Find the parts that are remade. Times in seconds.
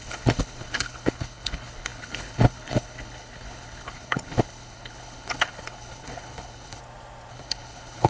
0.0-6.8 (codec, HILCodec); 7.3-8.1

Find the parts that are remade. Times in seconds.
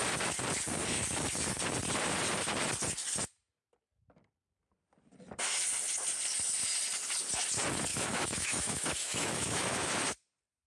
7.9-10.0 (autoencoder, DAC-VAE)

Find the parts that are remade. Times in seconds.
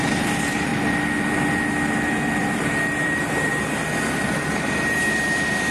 0.0-0.7 (vocoder, BigVGAN v2); 2.5-3.5; 4.1-5.7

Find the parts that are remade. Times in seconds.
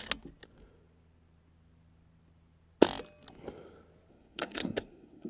4.1-5.3 (codec, SNAC)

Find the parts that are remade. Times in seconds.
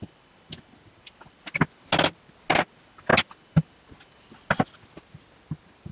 none